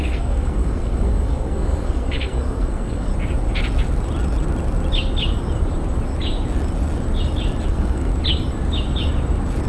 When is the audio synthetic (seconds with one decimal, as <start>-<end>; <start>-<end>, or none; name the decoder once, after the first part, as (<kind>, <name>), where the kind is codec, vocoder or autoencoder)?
0.0-3.1 (codec, SNAC); 7.7-8.1